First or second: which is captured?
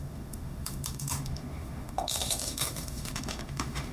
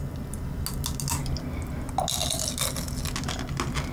second